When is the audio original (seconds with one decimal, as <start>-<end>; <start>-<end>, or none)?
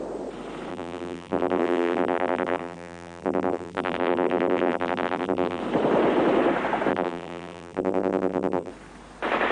0.0-0.7; 5.6-6.9; 8.7-9.5